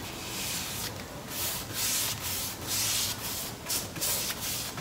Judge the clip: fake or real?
real